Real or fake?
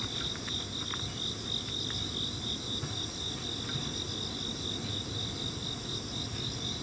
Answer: real